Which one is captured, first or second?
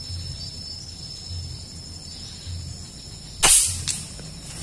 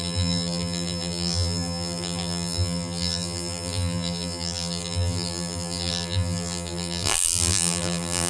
first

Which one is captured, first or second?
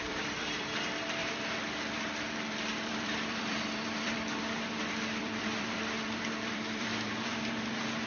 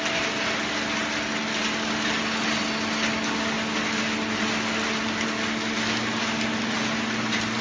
second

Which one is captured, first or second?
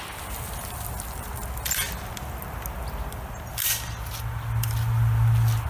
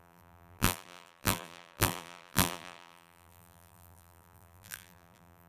first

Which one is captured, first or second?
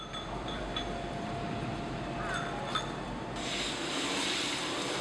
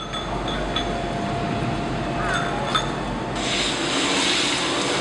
second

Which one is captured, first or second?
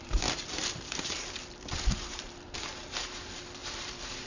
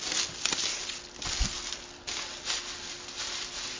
second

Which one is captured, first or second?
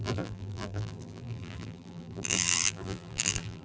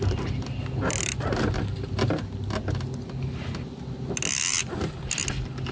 second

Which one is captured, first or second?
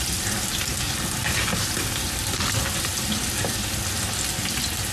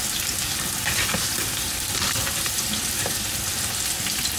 first